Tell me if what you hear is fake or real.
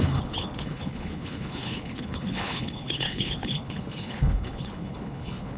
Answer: fake